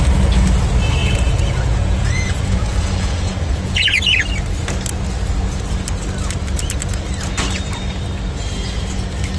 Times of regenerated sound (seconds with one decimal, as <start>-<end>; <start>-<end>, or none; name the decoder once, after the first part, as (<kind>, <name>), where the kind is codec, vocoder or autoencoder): 1.0-4.0 (vocoder, Vocos)